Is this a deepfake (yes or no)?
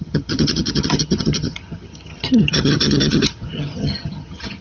yes